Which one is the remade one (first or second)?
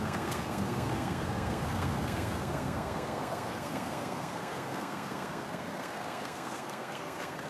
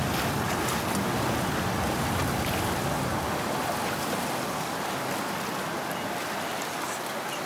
first